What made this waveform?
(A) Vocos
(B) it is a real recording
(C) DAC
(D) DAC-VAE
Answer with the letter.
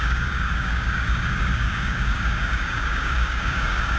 C